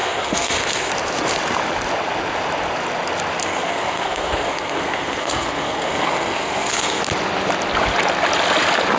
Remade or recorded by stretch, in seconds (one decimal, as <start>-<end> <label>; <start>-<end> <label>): 0.0-0.9 remade; 0.9-3.4 recorded; 3.4-7.0 remade; 7.0-9.0 recorded